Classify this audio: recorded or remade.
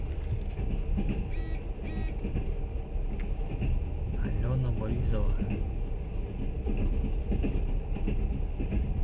recorded